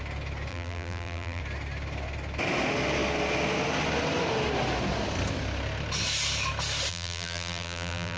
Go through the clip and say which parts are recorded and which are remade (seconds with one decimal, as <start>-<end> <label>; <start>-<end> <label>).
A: 0.0-0.5 recorded; 0.5-1.4 remade; 1.4-6.9 recorded; 6.9-8.2 remade

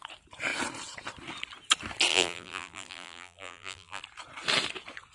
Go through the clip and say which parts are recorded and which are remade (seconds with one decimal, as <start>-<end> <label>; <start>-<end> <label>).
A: 0.0-2.1 recorded; 2.1-4.0 remade; 4.0-5.1 recorded